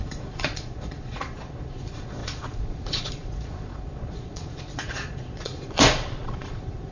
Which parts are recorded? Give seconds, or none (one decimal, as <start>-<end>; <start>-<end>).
none